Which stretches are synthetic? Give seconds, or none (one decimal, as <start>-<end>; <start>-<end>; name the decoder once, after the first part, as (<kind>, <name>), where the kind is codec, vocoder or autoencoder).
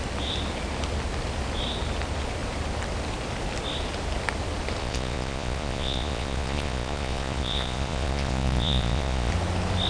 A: 4.8-9.3 (vocoder, Vocos)